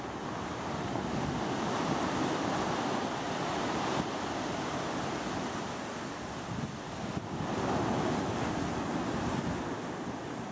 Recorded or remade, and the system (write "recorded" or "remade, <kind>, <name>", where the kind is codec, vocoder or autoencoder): recorded